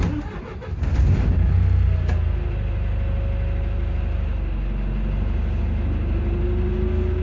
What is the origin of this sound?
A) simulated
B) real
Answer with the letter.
B